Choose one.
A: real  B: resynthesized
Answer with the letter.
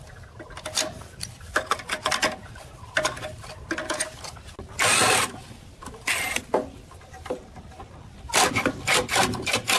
A